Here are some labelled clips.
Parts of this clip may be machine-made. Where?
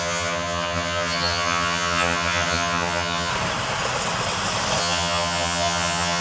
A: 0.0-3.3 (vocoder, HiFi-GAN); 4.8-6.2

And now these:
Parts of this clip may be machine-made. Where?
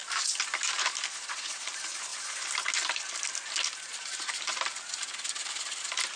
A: none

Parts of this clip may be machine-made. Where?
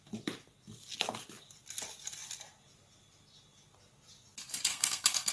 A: 4.7-5.3 (codec, SNAC)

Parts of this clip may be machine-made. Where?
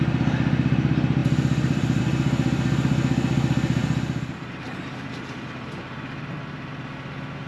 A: 1.2-2.0 (vocoder, BigVGAN v2); 3.8-5.8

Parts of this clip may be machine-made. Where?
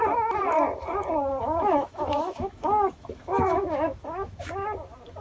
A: 1.4-4.5 (autoencoder, DAC-VAE)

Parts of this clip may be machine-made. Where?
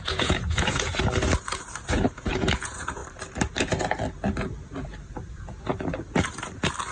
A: 0.0-0.9 (vocoder, Vocos); 1.9-3.0; 5.3-5.7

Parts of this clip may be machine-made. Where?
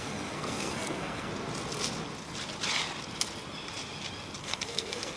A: 0.0-1.3 (codec, SNAC); 4.4-5.2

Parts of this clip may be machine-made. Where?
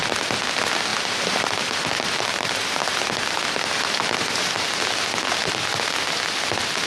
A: none